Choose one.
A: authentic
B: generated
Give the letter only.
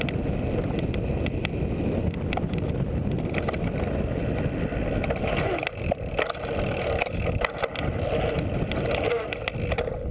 A